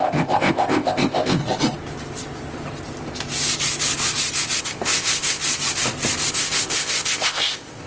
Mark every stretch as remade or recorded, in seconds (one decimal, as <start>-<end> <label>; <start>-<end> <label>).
0.0-1.4 remade; 1.4-4.6 recorded; 4.6-5.4 remade; 5.4-6.3 recorded; 6.3-7.9 remade